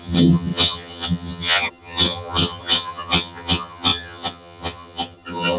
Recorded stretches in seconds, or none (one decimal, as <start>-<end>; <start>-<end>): none